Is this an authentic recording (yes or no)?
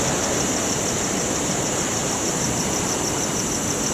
yes